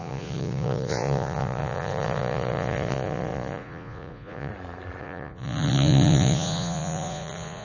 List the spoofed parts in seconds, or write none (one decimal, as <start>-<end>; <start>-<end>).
0.0-4.5; 5.0-7.6